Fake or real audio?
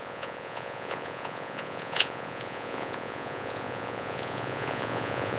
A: fake